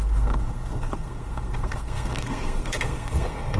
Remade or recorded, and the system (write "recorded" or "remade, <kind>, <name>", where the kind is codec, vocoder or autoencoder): remade, codec, SNAC